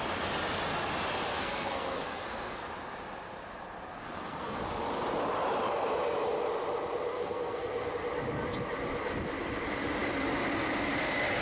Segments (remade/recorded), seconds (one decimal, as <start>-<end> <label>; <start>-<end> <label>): 0.0-1.3 recorded; 1.3-2.7 remade; 2.7-4.0 recorded; 4.0-4.6 remade; 4.6-7.1 recorded; 7.1-7.9 remade; 7.9-11.4 recorded